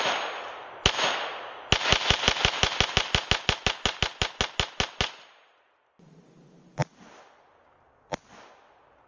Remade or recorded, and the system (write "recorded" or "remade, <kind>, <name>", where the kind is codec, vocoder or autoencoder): recorded